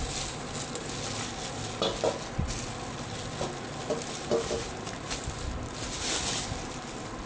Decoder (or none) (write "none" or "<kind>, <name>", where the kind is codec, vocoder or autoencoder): none